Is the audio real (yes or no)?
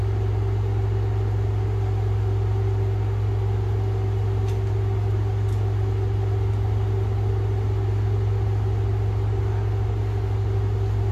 yes